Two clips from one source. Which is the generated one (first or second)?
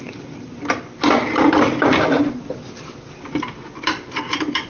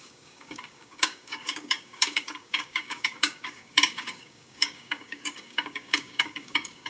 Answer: second